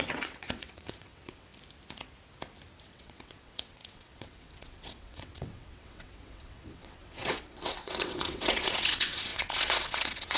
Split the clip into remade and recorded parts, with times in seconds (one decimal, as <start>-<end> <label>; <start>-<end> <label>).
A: 0.0-1.5 remade; 1.5-2.8 recorded; 2.8-10.4 remade